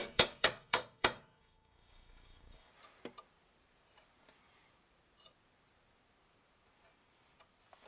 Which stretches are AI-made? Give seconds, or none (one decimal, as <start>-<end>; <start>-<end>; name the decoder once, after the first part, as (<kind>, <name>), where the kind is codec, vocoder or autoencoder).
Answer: 0.0-2.7 (codec, DAC)

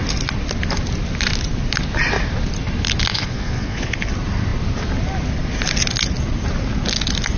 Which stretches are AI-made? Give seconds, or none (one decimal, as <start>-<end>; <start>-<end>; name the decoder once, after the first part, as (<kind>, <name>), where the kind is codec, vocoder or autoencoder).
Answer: 3.1-4.1 (vocoder, Vocos)

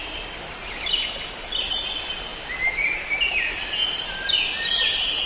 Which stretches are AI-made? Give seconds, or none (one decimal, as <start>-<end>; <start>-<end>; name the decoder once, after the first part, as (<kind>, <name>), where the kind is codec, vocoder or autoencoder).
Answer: 2.3-4.7 (vocoder, BigVGAN v2)

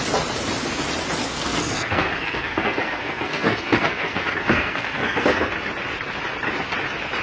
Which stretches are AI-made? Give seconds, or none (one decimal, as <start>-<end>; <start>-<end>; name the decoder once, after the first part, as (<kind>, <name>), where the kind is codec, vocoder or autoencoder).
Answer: 1.2-5.5 (codec, SNAC)

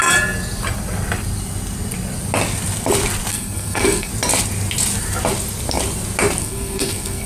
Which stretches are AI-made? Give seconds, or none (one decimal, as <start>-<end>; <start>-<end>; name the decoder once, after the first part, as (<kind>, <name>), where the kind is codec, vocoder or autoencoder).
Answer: 3.3-4.1 (codec, SNAC); 6.4-7.3

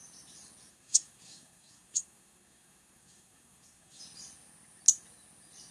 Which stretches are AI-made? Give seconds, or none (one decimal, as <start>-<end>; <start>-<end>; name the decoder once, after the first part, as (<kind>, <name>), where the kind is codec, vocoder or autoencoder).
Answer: 0.7-4.0 (codec, SNAC)

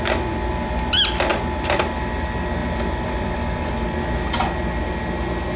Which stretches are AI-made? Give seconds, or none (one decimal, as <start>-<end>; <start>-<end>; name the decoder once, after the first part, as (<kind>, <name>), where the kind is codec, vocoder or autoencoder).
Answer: 2.6-3.7 (vocoder, BigVGAN v2)